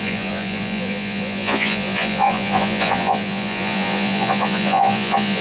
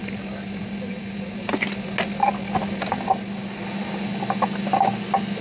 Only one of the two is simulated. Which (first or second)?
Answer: first